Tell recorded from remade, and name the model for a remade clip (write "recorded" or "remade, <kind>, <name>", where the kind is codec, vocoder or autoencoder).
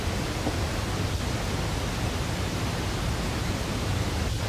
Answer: recorded